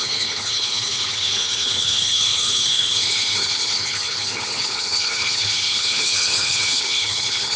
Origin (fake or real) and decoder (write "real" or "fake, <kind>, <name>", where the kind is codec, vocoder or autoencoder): fake, codec, HILCodec